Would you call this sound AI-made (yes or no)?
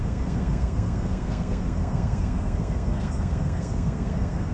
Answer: yes